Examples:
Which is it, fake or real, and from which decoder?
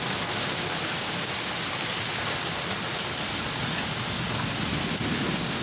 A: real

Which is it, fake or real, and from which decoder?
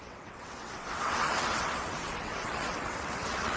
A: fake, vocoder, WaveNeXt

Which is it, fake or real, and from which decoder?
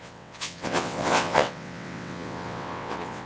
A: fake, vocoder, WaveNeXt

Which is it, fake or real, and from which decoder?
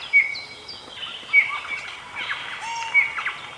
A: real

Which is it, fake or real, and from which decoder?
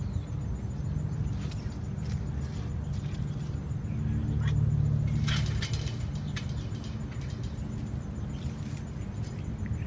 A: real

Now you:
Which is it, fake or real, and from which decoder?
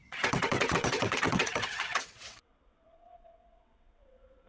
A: fake, vocoder, WaveNeXt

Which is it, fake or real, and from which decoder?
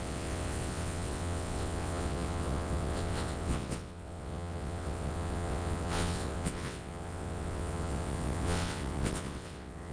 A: fake, vocoder, WaveNeXt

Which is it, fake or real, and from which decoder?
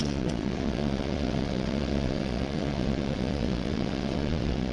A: fake, vocoder, WaveNeXt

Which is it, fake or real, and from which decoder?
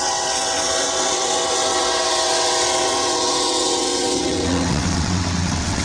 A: fake, vocoder, WaveNeXt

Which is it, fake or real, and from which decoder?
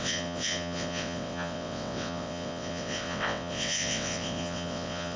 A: fake, vocoder, WaveNeXt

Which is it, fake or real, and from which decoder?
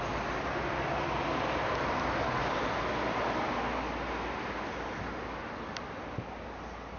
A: real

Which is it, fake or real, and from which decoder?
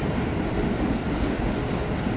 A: real